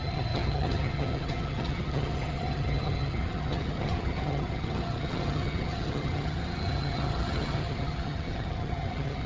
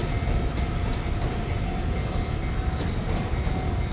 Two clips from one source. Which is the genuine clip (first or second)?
second